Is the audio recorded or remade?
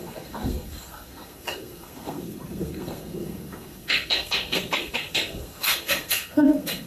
remade